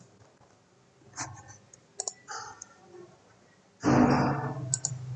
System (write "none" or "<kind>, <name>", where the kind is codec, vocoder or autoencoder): none